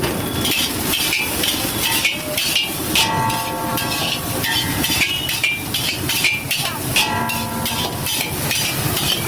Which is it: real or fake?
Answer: real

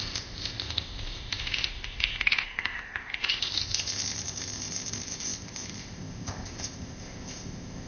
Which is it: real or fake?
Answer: fake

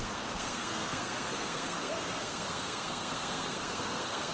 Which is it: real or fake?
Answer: fake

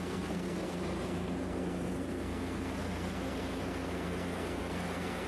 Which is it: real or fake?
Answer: fake